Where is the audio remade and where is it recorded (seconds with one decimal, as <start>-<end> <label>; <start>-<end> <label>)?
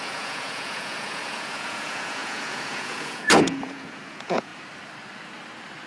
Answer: 0.0-4.5 remade; 4.5-5.9 recorded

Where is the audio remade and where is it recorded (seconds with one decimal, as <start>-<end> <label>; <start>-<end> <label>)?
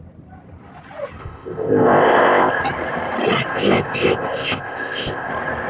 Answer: 0.0-1.2 recorded; 1.2-2.6 remade; 2.6-3.5 recorded; 3.5-5.3 remade; 5.3-5.7 recorded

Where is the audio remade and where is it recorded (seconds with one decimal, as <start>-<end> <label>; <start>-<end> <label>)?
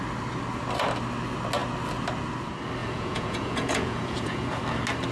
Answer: 0.0-2.8 recorded; 2.8-4.6 remade; 4.6-5.1 recorded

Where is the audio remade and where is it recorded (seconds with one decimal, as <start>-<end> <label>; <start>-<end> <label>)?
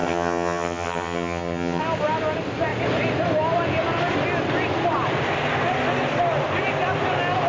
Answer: 0.0-1.8 remade; 1.8-7.5 recorded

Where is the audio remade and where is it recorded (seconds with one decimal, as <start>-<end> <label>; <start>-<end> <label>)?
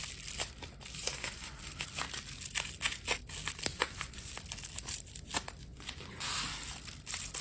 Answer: 0.0-1.0 recorded; 1.0-1.6 remade; 1.6-3.7 recorded; 3.7-4.3 remade; 4.3-5.6 recorded; 5.6-6.1 remade; 6.1-7.4 recorded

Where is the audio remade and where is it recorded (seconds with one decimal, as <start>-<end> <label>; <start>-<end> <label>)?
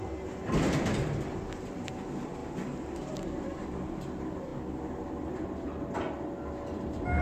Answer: 0.0-7.2 remade